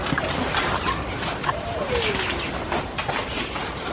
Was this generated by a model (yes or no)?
no